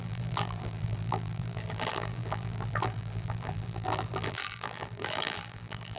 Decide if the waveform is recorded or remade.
remade